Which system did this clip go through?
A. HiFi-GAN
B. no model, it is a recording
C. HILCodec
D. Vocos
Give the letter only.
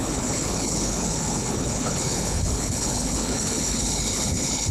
C